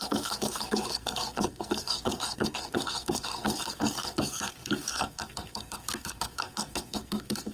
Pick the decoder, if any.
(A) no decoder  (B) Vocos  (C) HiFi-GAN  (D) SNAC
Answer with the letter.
D